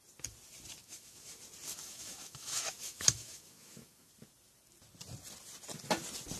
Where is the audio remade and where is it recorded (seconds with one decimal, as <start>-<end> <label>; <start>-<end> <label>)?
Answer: 0.0-0.8 recorded; 0.8-1.4 remade; 1.4-1.8 recorded; 1.8-4.1 remade; 4.1-6.4 recorded